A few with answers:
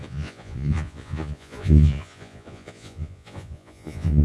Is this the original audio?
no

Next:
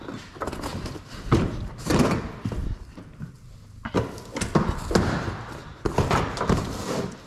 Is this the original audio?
yes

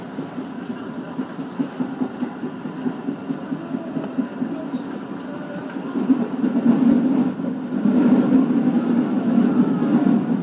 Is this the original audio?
yes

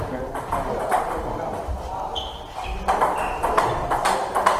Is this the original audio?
yes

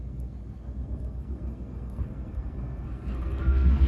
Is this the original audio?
no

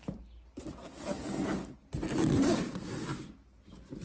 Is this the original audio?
yes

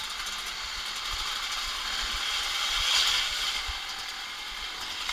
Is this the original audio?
yes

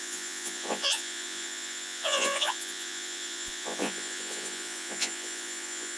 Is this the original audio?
no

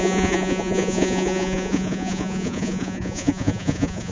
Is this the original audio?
no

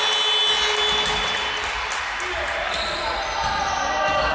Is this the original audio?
yes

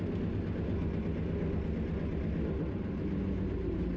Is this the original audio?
yes